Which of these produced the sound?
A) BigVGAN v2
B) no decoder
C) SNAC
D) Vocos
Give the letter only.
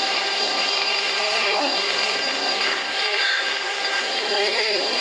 C